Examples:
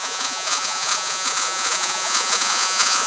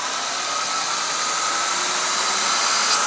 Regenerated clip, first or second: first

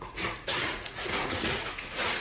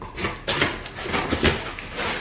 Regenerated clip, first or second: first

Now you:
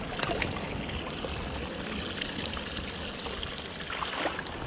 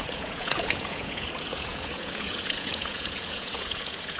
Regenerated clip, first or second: second